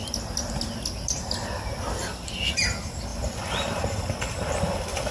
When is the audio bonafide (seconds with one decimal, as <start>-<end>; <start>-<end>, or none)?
2.5-3.1; 4.1-5.1